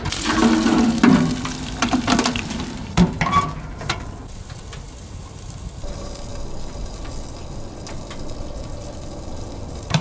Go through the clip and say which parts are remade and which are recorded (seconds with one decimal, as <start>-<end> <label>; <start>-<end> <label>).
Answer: 0.0-0.4 remade; 0.4-1.4 recorded; 1.4-6.3 remade; 6.3-9.6 recorded; 9.6-10.0 remade